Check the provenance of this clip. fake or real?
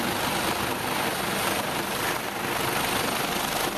real